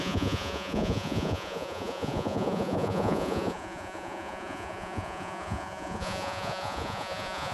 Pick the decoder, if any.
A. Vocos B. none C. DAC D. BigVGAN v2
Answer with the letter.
A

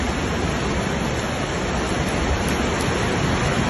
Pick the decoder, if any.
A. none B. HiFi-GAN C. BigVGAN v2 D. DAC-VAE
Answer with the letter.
A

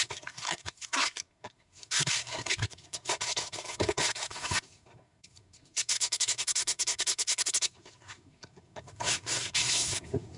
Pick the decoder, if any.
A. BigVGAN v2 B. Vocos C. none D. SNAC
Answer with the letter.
D